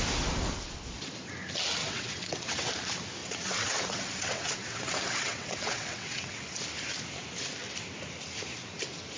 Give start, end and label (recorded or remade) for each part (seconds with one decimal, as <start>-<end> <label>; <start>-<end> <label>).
0.0-1.8 recorded; 1.8-2.7 remade; 2.7-3.2 recorded; 3.2-6.3 remade; 6.3-9.2 recorded